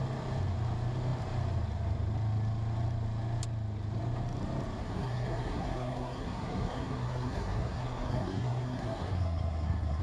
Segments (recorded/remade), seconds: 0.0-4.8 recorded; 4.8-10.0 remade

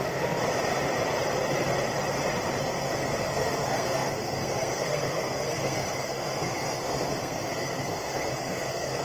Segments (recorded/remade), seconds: 0.0-0.4 remade; 0.4-2.6 recorded; 2.6-9.0 remade